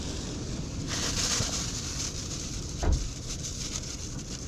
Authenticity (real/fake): fake